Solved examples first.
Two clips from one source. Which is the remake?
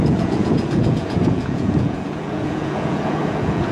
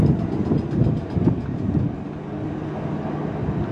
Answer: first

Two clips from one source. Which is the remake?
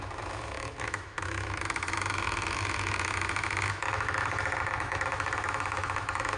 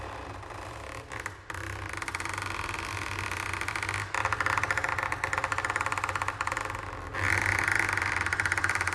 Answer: first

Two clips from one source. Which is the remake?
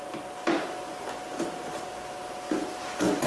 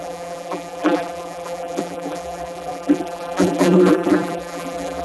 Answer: second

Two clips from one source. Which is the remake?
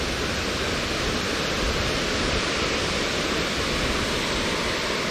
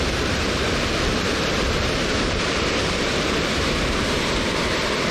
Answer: second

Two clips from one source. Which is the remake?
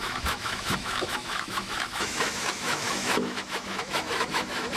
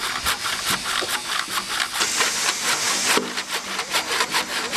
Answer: first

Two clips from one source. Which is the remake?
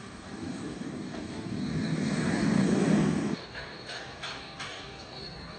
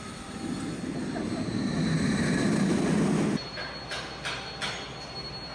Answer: first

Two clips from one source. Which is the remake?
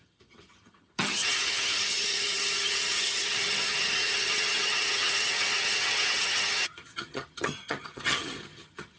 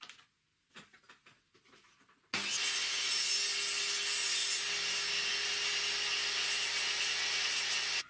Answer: first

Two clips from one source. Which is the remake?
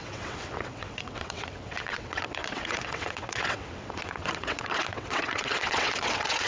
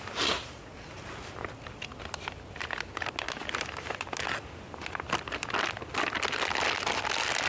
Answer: first